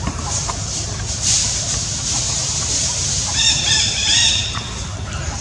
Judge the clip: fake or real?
fake